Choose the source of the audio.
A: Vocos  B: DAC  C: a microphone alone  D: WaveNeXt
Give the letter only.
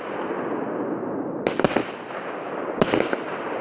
C